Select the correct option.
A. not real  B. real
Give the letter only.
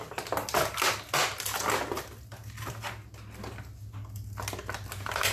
B